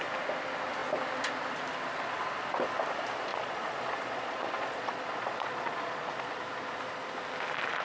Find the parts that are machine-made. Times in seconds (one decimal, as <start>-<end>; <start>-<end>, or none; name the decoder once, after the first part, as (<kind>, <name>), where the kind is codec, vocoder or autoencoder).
3.3-6.3 (vocoder, Vocos)